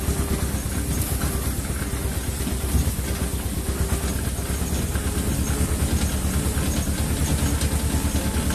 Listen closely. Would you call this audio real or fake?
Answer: real